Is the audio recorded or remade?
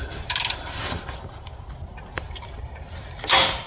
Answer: recorded